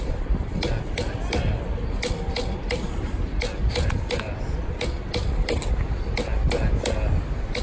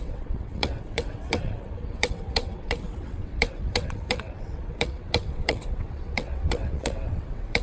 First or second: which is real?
first